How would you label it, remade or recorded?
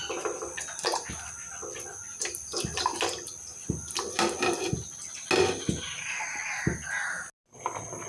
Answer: recorded